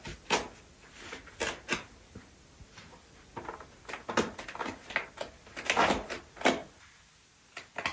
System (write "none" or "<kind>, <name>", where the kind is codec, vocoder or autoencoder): none